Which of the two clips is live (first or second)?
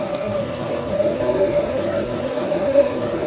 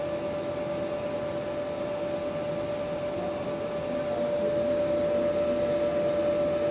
second